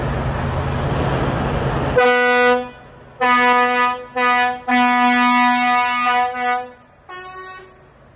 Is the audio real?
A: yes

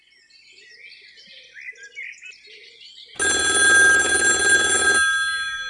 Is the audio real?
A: yes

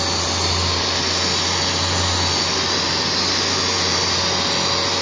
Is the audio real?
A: yes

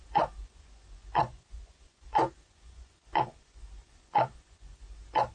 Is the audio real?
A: no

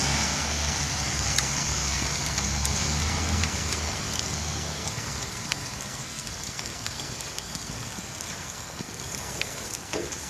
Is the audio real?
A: no